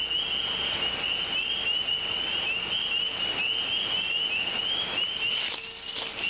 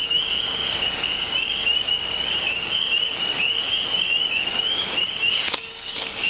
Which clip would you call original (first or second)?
first